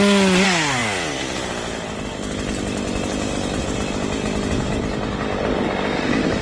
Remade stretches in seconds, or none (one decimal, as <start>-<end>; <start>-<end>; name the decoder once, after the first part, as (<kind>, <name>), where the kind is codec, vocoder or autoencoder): none